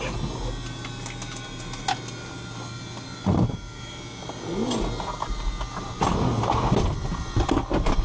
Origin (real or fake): real